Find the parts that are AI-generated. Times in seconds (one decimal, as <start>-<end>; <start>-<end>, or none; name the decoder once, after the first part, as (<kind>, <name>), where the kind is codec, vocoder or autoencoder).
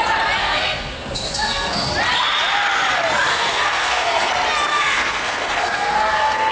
0.4-1.9 (codec, SNAC); 3.3-4.3; 4.7-6.5